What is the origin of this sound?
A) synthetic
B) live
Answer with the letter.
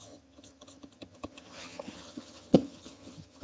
A